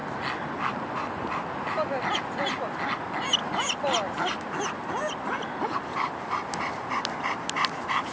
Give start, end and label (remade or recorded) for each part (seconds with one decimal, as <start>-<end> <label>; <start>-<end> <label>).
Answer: 0.0-8.1 recorded